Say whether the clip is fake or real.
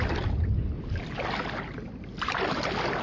real